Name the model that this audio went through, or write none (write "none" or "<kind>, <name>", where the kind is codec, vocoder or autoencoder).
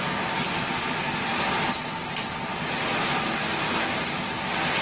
none